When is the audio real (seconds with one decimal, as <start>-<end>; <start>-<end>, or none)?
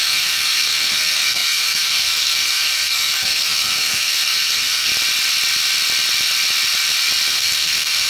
4.9-7.3